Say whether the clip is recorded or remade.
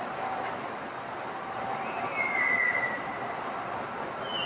recorded